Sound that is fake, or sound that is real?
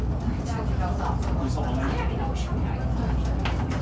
real